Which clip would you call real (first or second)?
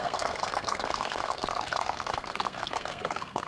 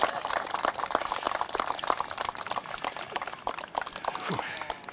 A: second